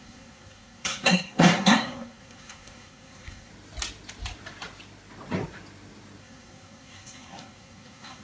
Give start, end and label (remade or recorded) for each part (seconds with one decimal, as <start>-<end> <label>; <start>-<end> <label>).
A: 0.0-3.5 remade; 3.5-6.2 recorded; 6.2-8.2 remade